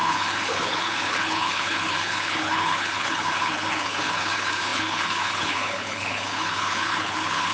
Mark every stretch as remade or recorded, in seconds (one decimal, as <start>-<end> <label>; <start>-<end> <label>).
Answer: 0.0-7.5 remade